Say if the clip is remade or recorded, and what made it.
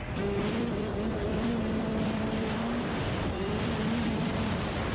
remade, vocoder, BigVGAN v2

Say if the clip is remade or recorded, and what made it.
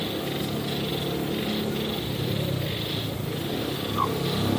recorded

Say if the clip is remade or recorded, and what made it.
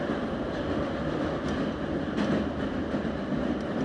recorded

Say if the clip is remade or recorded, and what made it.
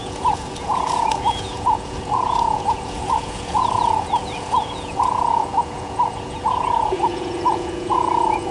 remade, vocoder, Vocos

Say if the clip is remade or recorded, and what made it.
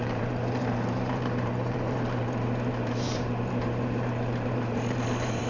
remade, vocoder, BigVGAN v2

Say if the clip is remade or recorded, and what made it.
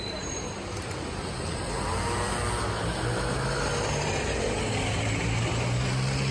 recorded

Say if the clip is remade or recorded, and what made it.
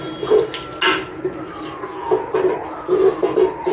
recorded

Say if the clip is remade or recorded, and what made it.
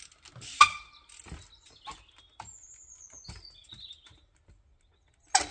recorded